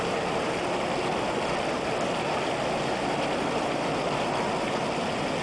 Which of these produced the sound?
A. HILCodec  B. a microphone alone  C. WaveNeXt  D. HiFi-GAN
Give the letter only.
B